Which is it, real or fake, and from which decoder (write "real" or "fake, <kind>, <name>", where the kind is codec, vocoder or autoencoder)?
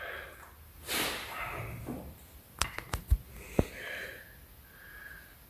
real